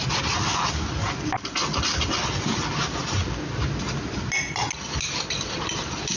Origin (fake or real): real